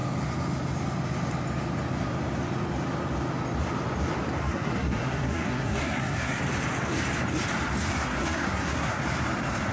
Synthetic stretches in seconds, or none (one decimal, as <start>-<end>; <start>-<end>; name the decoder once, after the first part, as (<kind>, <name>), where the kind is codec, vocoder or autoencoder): 4.4-6.4 (codec, SNAC); 7.9-9.0